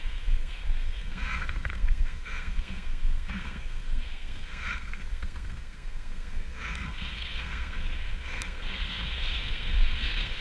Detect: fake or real fake